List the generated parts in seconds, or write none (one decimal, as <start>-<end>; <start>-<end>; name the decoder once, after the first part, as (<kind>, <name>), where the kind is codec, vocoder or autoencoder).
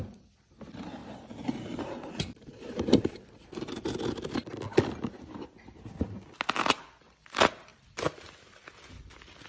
1.0-4.3 (vocoder, BigVGAN v2)